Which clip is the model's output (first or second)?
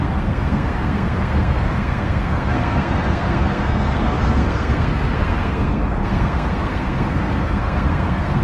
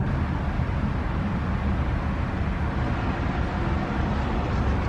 first